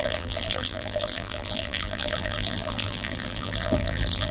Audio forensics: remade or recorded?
remade